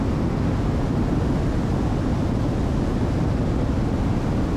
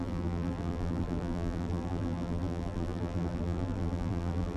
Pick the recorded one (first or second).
first